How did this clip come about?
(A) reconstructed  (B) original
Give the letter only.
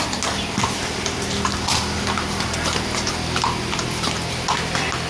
B